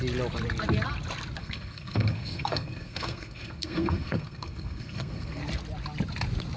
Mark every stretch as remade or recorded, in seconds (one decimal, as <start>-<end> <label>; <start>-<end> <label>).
0.0-1.4 recorded; 1.4-5.4 remade; 5.4-6.6 recorded